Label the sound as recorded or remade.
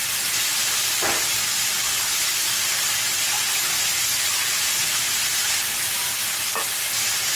recorded